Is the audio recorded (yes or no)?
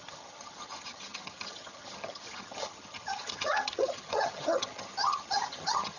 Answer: no